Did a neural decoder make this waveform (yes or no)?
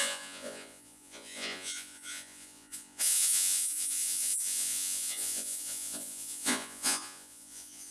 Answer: yes